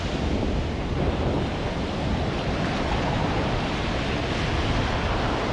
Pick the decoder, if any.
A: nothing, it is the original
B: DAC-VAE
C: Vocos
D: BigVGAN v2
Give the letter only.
D